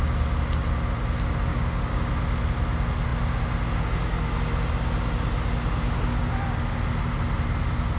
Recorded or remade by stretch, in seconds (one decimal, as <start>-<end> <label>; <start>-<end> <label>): 0.0-1.5 recorded; 1.5-2.1 remade; 2.1-8.0 recorded